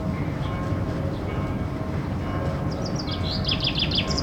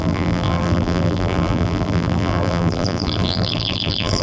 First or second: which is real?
first